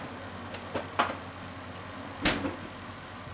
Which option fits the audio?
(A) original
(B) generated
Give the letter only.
A